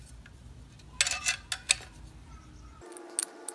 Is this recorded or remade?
recorded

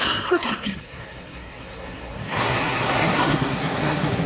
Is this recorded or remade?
remade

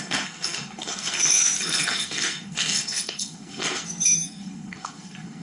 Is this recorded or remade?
remade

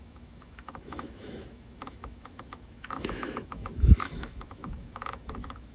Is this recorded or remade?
remade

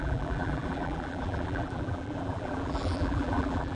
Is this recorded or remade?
remade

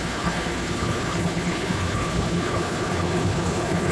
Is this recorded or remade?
remade